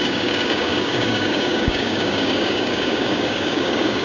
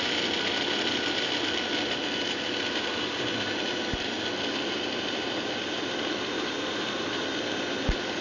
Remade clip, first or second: first